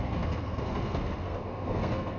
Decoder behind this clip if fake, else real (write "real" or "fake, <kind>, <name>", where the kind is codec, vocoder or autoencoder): fake, codec, SNAC